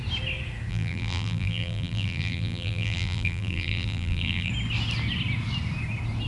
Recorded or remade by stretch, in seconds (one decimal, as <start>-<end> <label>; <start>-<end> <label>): 0.0-0.7 recorded; 0.7-4.5 remade; 4.5-6.3 recorded